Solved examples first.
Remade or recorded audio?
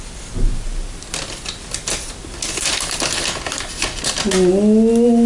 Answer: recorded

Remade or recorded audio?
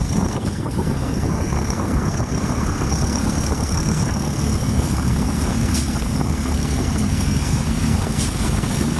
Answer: remade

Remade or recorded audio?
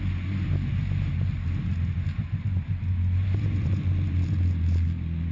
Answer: recorded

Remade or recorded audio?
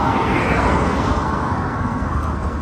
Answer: remade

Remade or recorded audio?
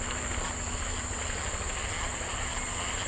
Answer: recorded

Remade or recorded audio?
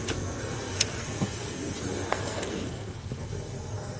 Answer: remade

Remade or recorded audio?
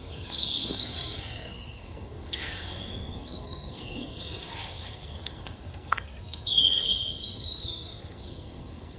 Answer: remade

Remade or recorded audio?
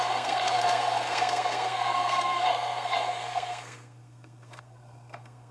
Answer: remade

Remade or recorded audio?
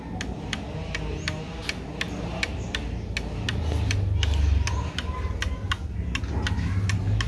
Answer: recorded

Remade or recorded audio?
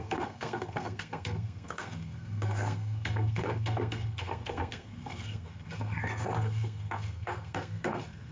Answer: remade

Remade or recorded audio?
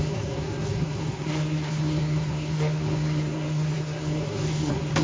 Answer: remade